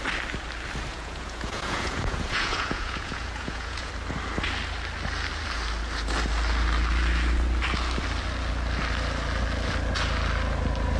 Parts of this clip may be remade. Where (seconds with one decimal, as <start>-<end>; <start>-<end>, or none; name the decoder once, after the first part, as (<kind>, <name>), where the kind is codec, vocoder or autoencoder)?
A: 0.9-3.9 (vocoder, Vocos)